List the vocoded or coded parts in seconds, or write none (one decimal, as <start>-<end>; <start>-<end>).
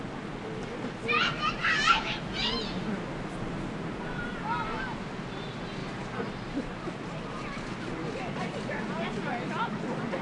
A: none